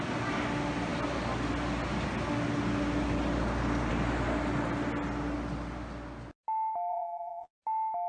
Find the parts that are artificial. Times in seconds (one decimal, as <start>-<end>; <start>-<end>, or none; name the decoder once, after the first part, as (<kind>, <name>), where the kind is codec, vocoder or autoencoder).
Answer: 6.9-7.5 (vocoder, Vocos)